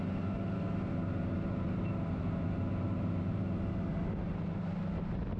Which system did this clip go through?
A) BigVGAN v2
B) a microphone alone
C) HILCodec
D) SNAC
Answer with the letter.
B